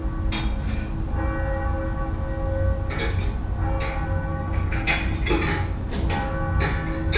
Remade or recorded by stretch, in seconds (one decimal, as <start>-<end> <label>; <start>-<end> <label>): 0.0-4.3 recorded; 4.3-4.9 remade; 4.9-7.2 recorded